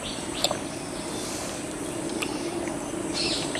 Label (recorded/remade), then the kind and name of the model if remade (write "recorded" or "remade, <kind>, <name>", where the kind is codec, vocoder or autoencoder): remade, vocoder, BigVGAN v2